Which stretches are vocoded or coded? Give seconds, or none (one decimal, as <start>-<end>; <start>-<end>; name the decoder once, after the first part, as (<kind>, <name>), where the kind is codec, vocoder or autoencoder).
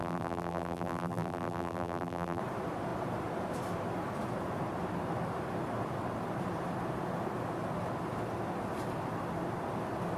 0.0-2.4 (vocoder, BigVGAN v2)